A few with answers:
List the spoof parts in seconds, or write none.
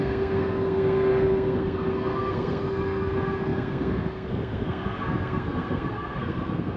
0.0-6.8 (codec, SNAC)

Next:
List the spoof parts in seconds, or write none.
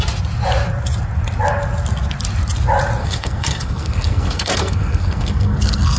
3.0-6.0 (codec, SNAC)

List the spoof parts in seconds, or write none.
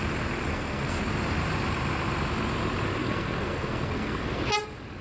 0.5-1.0 (codec, SNAC); 3.0-4.4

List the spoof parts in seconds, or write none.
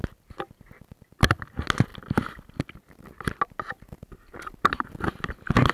none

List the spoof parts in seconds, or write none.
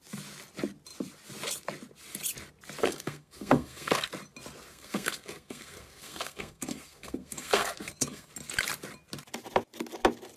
2.8-4.1 (codec, SNAC); 4.7-8.3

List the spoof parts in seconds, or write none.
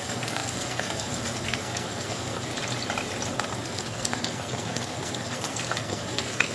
0.0-2.5 (codec, SNAC); 3.3-6.5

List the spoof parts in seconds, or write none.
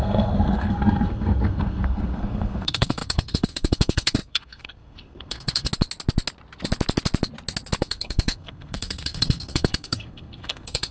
0.0-5.7 (codec, SNAC); 7.8-10.9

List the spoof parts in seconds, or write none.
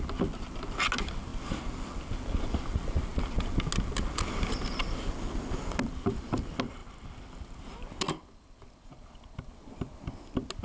none